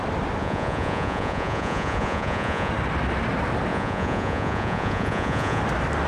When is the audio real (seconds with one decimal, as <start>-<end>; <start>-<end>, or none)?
0.0-0.4; 2.7-3.7; 5.6-6.1